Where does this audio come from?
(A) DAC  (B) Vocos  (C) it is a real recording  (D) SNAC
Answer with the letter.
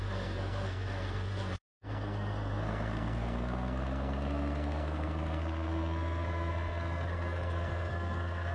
D